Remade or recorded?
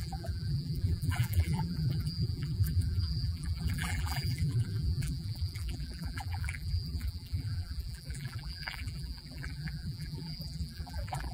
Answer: remade